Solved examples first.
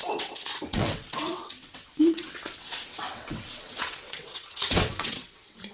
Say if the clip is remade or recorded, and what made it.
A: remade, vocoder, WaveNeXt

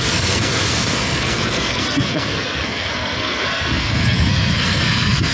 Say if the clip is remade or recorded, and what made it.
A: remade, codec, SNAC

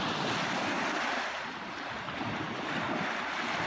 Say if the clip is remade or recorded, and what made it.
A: recorded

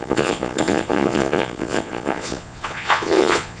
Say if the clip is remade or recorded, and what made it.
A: remade, vocoder, Vocos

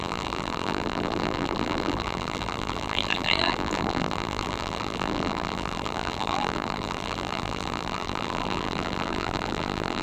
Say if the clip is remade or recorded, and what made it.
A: remade, vocoder, BigVGAN v2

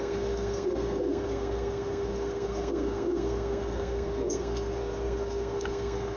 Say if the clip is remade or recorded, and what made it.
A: remade, codec, SNAC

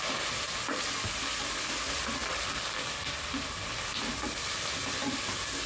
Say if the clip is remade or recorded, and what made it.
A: recorded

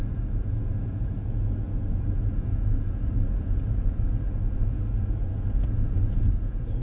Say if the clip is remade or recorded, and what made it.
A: remade, vocoder, Vocos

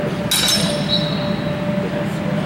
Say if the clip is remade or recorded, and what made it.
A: recorded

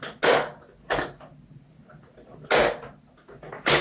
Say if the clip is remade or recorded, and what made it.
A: recorded